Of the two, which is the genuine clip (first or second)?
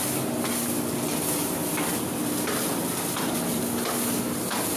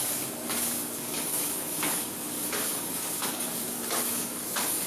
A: first